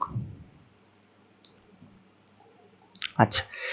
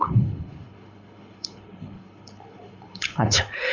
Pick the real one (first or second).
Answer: first